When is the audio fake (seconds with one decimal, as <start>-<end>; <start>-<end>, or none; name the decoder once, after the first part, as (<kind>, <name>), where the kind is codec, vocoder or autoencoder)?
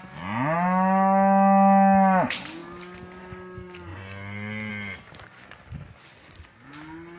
none